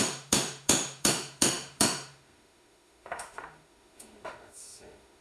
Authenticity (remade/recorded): remade